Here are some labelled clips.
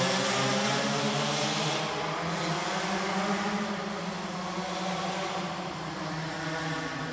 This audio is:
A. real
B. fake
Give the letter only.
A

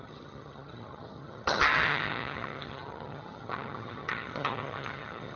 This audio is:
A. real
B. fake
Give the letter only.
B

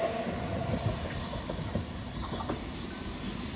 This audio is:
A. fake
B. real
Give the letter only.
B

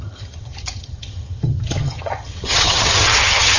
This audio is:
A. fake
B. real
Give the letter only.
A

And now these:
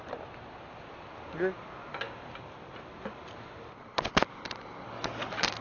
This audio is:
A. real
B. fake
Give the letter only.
A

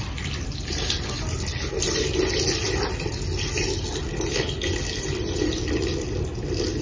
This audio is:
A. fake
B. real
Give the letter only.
B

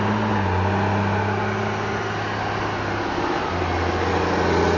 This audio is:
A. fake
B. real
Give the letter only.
B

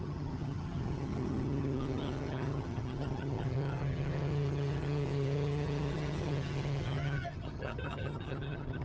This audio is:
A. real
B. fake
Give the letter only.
B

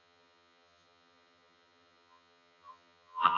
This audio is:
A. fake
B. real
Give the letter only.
A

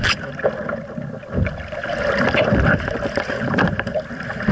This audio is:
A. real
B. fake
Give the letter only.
A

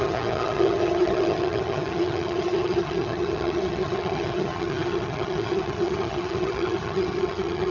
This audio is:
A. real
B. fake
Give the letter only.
B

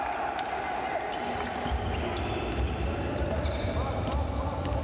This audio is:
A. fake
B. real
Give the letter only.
B